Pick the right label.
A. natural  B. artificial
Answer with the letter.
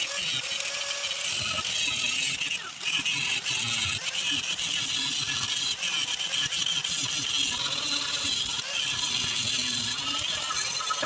A